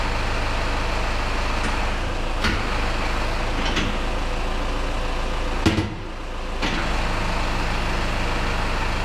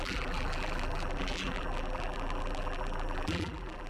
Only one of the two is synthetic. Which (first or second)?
second